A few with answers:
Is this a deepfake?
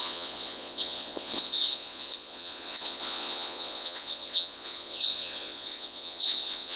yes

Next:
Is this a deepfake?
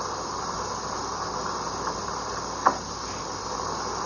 no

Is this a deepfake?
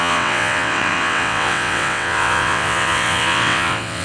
yes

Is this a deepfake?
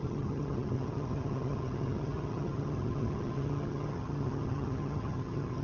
yes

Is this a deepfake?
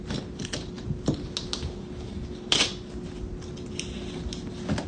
no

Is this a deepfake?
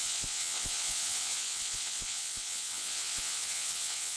yes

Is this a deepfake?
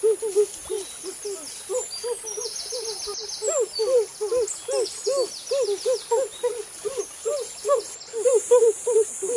no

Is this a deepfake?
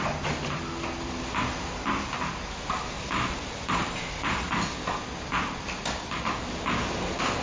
no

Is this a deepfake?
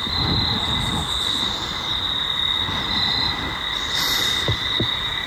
no